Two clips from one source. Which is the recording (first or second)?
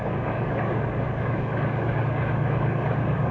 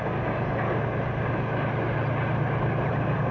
second